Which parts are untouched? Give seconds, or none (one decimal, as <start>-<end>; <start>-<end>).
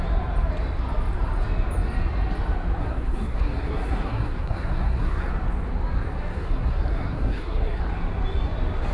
0.0-2.8; 5.3-6.3; 7.8-8.9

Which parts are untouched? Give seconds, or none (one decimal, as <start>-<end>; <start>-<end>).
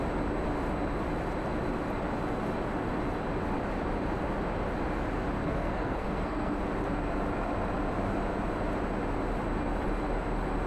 0.0-5.4; 6.6-10.7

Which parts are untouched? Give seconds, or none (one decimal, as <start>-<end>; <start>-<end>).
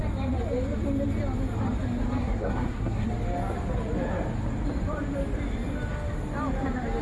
0.0-2.2; 3.1-7.0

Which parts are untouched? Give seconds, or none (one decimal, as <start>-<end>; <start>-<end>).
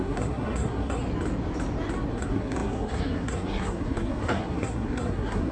1.0-2.1